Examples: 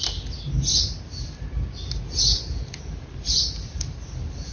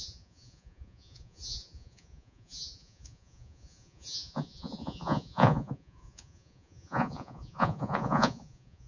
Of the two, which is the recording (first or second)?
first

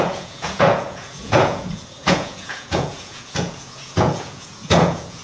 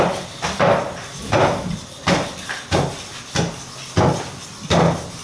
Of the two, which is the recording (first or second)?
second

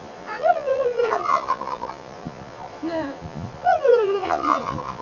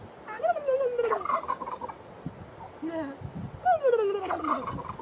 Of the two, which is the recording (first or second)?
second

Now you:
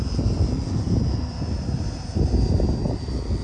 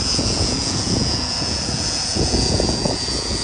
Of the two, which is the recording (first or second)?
first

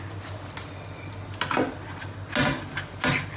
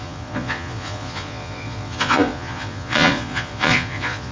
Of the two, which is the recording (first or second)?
first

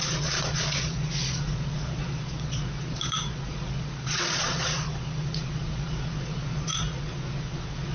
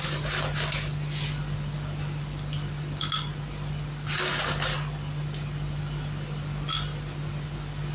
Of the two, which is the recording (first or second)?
second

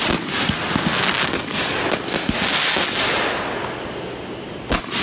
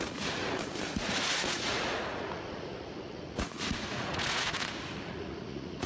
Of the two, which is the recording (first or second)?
first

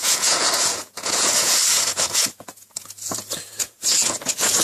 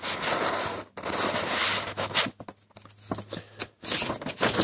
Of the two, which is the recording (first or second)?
second